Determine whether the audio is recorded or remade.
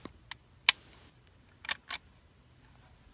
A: recorded